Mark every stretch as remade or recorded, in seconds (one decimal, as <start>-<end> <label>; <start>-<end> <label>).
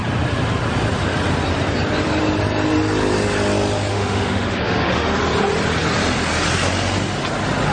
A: 0.0-3.9 recorded; 3.9-5.2 remade; 5.2-7.7 recorded